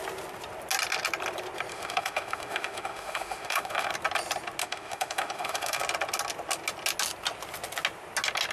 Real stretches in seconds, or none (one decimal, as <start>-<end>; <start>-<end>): 0.0-1.7; 3.9-4.6; 5.8-8.5